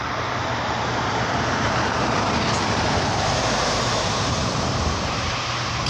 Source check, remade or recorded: remade